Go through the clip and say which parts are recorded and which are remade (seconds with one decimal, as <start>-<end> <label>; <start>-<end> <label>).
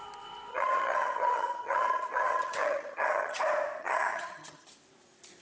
0.0-0.5 recorded; 0.5-3.4 remade; 3.4-3.8 recorded; 3.8-4.7 remade; 4.7-5.4 recorded